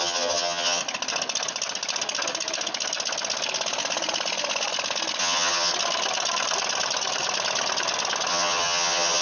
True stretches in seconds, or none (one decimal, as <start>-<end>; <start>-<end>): 0.8-5.2; 5.7-8.3